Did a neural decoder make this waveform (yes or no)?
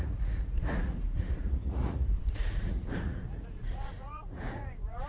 yes